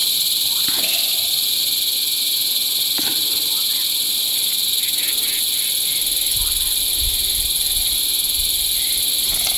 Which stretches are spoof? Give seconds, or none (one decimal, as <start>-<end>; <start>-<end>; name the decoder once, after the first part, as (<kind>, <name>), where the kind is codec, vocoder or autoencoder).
3.1-3.6 (vocoder, BigVGAN v2)